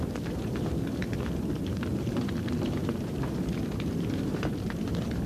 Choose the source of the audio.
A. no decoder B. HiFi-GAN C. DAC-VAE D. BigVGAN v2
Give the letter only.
D